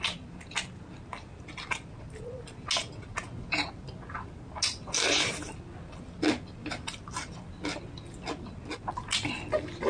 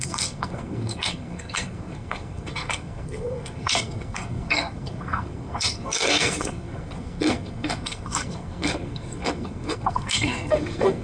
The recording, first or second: first